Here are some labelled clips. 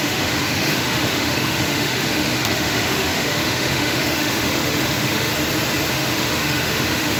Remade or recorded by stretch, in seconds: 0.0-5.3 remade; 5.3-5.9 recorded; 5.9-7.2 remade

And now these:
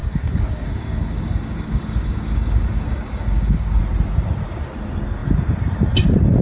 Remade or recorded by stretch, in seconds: 0.0-3.8 remade; 3.8-6.4 recorded

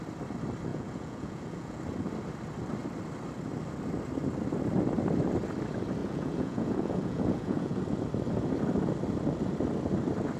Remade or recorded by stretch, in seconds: 0.0-0.7 recorded; 0.7-1.8 remade; 1.8-6.0 recorded; 6.0-7.8 remade; 7.8-10.4 recorded

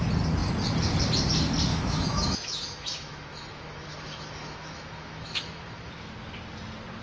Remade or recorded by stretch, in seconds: 0.0-1.7 recorded; 1.7-5.9 remade; 5.9-7.0 recorded

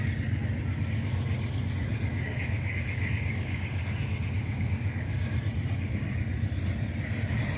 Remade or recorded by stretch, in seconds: 0.0-2.1 recorded; 2.1-5.3 remade; 5.3-7.6 recorded

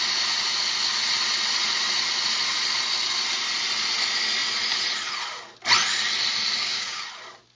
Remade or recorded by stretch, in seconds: 0.0-6.6 recorded; 6.6-7.1 remade; 7.1-7.5 recorded

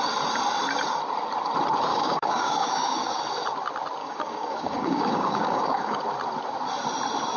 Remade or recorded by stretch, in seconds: 0.0-1.9 recorded; 1.9-3.2 remade; 3.2-4.0 recorded; 4.0-6.0 remade; 6.0-7.4 recorded